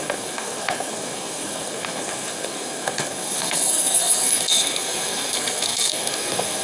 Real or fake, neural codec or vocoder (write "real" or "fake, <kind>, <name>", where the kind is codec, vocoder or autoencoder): fake, codec, SNAC